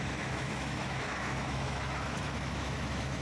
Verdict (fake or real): fake